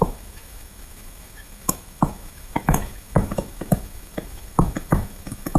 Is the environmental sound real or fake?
fake